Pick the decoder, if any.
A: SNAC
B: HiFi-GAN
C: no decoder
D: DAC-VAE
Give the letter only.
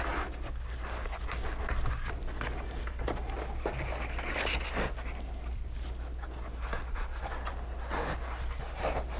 C